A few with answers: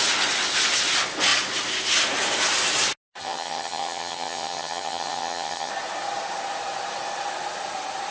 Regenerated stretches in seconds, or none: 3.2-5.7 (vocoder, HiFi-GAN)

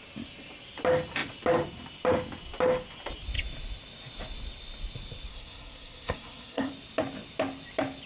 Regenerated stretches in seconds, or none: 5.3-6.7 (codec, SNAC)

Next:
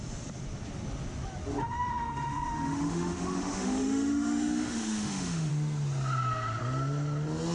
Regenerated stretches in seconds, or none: 1.6-5.5 (autoencoder, DAC-VAE)